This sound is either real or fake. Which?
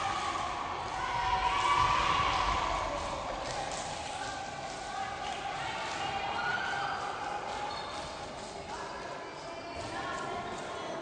real